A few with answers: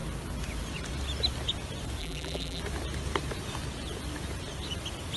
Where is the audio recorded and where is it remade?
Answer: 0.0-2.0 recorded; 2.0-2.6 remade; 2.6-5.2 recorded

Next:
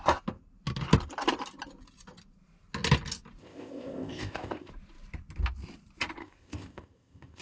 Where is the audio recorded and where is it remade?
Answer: 0.0-3.4 recorded; 3.4-4.7 remade; 4.7-6.2 recorded; 6.2-7.4 remade

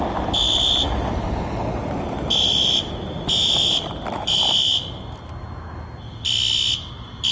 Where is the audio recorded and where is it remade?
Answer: 0.0-7.3 recorded

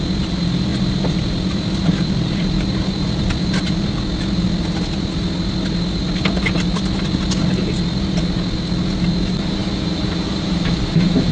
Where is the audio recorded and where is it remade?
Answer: 0.0-0.7 recorded; 0.7-4.0 remade; 4.0-11.3 recorded

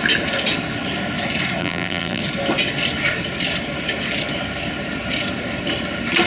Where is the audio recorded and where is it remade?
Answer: 0.0-1.6 recorded; 1.6-2.2 remade; 2.2-6.3 recorded

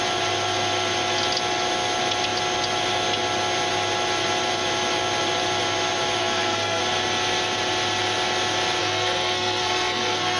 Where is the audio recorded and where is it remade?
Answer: 0.0-6.2 recorded; 6.2-6.8 remade; 6.8-8.8 recorded; 8.8-10.4 remade

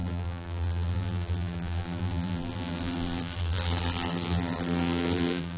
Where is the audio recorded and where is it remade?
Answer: 0.0-5.6 remade

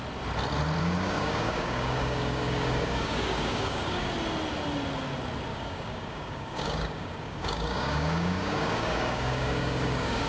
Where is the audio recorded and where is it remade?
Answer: 0.0-0.8 recorded; 0.8-4.1 remade; 4.1-5.5 recorded; 5.5-10.3 remade